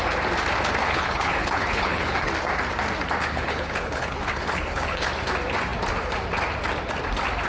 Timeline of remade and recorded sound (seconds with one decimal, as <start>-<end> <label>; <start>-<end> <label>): 0.0-0.8 recorded; 0.8-2.3 remade; 2.3-3.2 recorded; 3.2-5.1 remade; 5.1-7.5 recorded